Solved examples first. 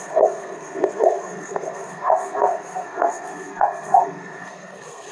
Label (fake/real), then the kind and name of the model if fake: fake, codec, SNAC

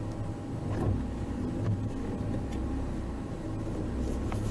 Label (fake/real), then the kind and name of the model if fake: real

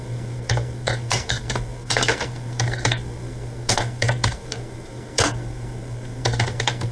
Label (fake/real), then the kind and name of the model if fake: fake, codec, SNAC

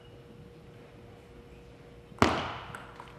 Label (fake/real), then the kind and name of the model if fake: real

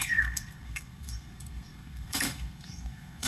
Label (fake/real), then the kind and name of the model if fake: fake, codec, SNAC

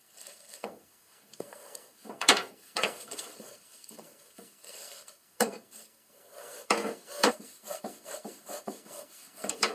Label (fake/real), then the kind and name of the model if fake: fake, codec, SNAC